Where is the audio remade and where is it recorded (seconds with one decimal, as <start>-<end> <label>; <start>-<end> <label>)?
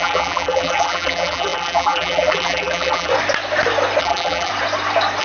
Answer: 0.0-3.1 remade; 3.1-4.0 recorded; 4.0-4.5 remade; 4.5-5.2 recorded